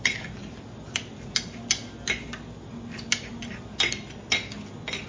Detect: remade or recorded recorded